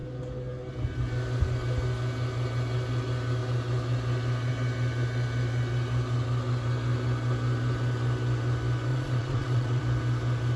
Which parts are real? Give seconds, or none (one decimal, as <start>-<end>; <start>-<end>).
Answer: 0.0-8.9; 9.8-10.6